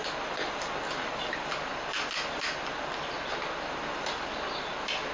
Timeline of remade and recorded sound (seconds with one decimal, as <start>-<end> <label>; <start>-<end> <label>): 0.0-5.1 recorded

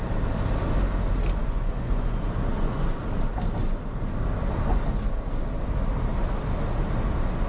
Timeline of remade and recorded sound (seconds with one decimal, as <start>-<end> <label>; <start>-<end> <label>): 0.0-1.4 recorded; 1.4-3.0 remade; 3.0-7.5 recorded